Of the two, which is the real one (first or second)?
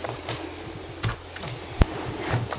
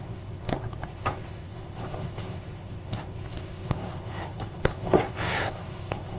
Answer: first